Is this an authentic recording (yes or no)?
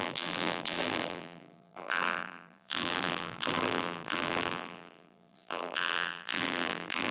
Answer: no